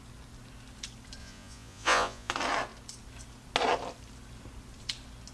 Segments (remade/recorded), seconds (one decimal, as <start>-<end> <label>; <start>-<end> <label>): 0.0-1.2 recorded; 1.2-2.3 remade; 2.3-5.3 recorded